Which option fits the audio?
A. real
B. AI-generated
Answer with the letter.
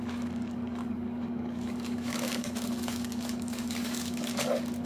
B